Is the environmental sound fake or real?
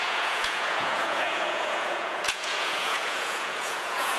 fake